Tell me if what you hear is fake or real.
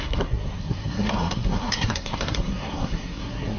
fake